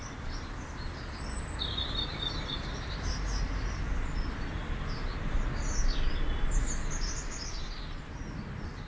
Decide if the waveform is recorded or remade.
remade